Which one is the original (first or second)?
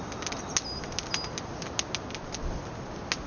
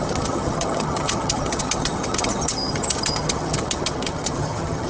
first